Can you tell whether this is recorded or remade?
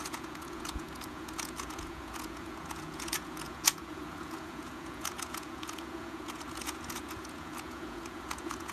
remade